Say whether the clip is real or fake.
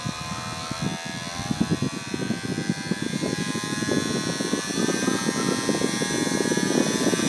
real